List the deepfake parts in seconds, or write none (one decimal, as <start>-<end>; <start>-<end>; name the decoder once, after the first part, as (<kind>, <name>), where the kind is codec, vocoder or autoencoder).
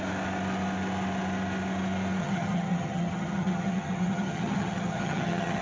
2.2-5.6 (vocoder, HiFi-GAN)